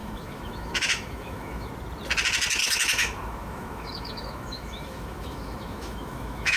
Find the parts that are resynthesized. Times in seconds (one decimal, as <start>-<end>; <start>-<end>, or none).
0.0-1.7; 2.6-6.6